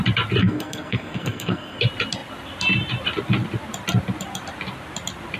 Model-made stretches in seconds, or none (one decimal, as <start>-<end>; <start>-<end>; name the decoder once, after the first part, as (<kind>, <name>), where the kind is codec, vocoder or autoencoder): 0.4-1.8 (codec, SNAC)